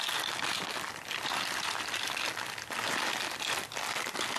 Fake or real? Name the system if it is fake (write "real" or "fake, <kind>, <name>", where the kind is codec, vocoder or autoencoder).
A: real